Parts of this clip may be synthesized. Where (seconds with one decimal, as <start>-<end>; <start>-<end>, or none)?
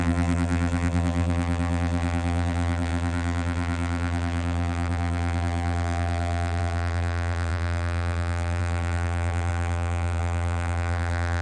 0.0-11.4